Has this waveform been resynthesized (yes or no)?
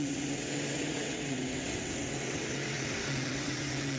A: yes